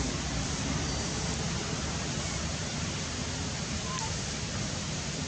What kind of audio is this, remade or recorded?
remade